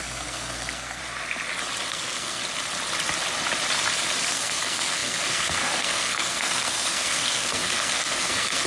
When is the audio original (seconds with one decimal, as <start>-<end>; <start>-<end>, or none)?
1.0-1.9; 2.4-4.3